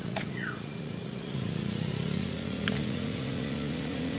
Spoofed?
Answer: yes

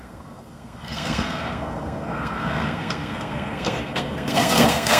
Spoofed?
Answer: yes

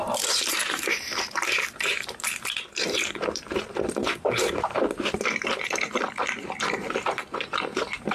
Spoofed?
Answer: yes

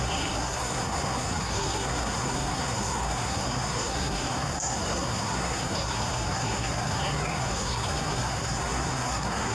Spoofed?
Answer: yes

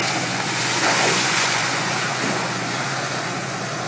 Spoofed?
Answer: yes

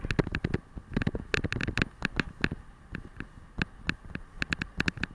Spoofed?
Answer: no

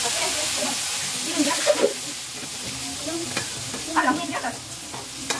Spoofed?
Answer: no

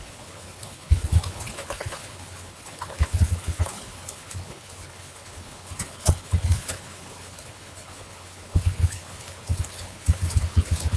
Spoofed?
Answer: yes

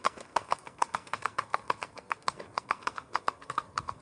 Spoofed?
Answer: yes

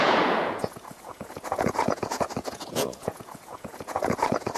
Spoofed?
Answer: yes